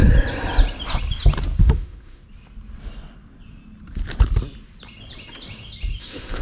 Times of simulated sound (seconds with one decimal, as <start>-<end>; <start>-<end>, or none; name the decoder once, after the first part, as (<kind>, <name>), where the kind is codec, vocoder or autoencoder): 1.6-2.2 (autoencoder, DAC-VAE); 6.0-6.4

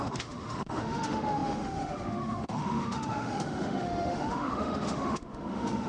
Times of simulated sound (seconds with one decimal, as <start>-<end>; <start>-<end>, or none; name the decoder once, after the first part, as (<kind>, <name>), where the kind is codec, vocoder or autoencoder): 0.0-5.9 (autoencoder, DAC-VAE)

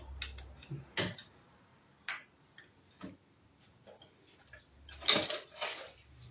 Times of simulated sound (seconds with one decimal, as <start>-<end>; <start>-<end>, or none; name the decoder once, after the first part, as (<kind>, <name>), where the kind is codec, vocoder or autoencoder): none

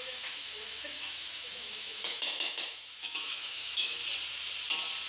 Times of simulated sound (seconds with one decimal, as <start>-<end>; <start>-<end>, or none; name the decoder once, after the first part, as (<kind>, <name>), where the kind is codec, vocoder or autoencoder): 0.0-4.0 (autoencoder, DAC-VAE)

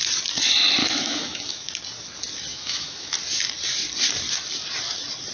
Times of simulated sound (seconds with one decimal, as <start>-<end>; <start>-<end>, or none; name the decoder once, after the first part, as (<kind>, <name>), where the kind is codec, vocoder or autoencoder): 0.8-1.8 (autoencoder, DAC-VAE); 2.5-3.2

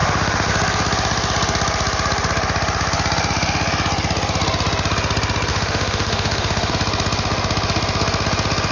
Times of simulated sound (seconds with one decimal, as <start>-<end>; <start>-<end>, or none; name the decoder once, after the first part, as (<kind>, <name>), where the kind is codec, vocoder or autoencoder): 0.0-0.5 (autoencoder, DAC-VAE); 5.5-6.7

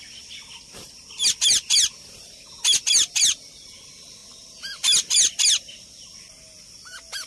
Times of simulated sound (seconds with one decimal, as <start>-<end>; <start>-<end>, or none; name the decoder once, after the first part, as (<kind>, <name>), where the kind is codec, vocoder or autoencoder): none

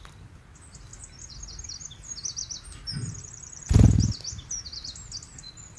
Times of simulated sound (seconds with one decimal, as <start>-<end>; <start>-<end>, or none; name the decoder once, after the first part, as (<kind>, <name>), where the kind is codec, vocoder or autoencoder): none